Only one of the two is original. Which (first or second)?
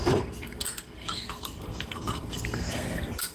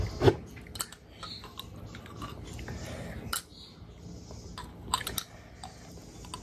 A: second